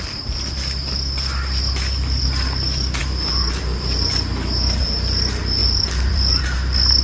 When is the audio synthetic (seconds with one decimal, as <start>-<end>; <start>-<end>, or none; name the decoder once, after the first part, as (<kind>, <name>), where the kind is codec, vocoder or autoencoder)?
5.6-6.4 (vocoder, BigVGAN v2)